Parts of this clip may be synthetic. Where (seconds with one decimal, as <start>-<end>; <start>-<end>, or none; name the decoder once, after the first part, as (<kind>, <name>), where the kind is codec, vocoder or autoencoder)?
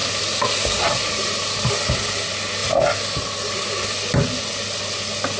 none